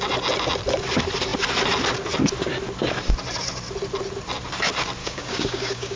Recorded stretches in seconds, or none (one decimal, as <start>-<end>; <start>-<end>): 0.0-5.0